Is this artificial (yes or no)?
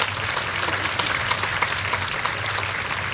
no